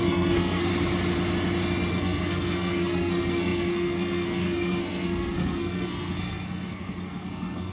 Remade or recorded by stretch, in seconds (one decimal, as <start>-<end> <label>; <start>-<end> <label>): 0.0-0.7 remade; 0.7-1.9 recorded; 1.9-7.7 remade